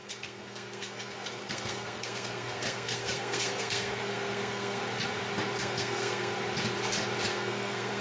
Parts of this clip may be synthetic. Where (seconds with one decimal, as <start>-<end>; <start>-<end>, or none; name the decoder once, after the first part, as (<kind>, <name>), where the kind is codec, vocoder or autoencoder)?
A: 0.0-4.8 (codec, SNAC); 5.6-6.3; 7.3-8.0